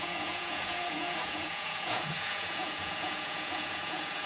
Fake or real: fake